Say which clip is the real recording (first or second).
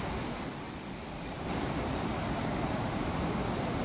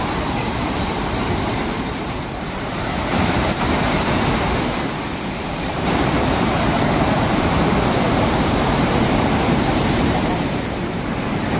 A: first